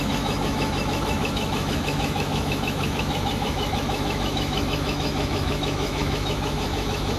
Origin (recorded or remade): remade